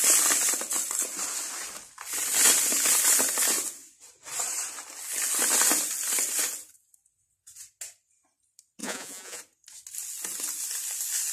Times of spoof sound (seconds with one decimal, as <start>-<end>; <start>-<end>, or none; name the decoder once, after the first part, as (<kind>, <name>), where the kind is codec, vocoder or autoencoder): 8.8-9.4 (vocoder, Vocos)